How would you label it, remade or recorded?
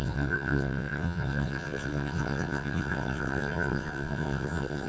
remade